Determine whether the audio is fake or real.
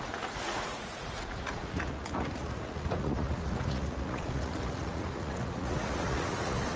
fake